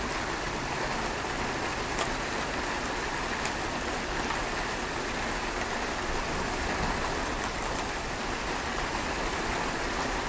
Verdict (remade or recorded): recorded